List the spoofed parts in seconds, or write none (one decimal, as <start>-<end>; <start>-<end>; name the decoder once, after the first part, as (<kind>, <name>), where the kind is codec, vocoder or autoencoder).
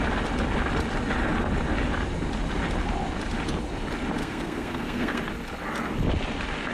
4.2-5.2 (codec, SNAC)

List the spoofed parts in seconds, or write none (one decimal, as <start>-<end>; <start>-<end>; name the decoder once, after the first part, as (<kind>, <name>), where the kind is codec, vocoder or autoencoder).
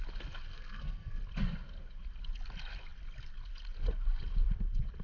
0.5-1.2 (codec, SNAC)